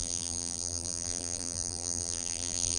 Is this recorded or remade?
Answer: remade